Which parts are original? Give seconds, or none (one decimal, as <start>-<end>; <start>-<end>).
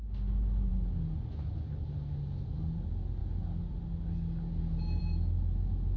0.0-6.0